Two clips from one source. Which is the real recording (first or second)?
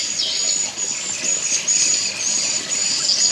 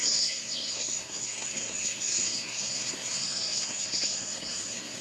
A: first